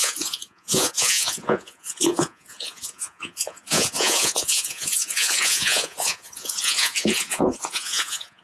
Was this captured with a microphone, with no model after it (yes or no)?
no